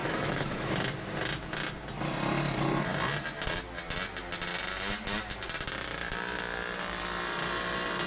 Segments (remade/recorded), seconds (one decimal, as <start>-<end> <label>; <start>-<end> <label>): 0.0-0.7 remade; 0.7-8.1 recorded